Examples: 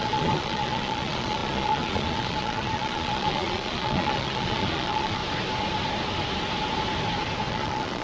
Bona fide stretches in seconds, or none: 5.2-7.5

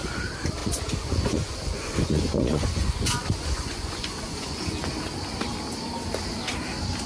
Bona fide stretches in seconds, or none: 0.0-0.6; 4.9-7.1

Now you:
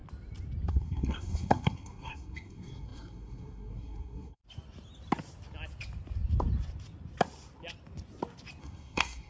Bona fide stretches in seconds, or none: 0.0-0.7; 4.4-8.6

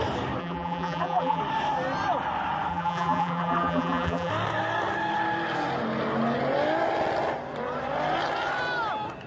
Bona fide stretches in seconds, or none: 0.0-0.4; 1.4-2.7; 4.3-9.3

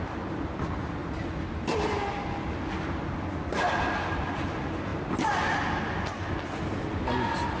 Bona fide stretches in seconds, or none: 0.0-7.6

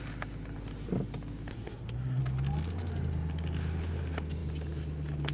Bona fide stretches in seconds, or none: 0.0-1.5; 2.2-5.3

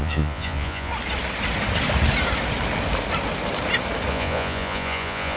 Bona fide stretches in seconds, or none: 0.9-4.1

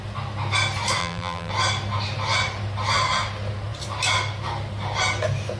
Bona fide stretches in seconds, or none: 0.0-1.0; 1.5-5.6